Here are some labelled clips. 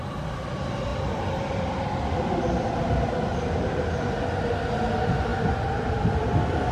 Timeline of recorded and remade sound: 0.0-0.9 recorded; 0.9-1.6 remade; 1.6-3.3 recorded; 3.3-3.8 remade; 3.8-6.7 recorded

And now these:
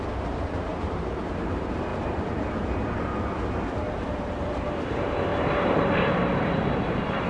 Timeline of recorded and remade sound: 0.0-0.7 remade; 0.7-1.4 recorded; 1.4-3.1 remade; 3.1-3.9 recorded; 3.9-7.3 remade

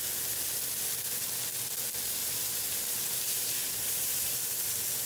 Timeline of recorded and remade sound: 0.0-2.2 recorded; 2.2-4.3 remade; 4.3-5.1 recorded